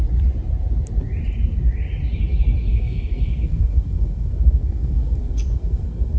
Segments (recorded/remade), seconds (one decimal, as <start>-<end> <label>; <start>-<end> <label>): 0.0-2.7 recorded; 2.7-6.2 remade